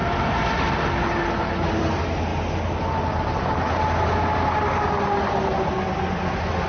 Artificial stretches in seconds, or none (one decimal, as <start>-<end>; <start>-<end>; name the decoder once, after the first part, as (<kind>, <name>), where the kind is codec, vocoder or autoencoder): none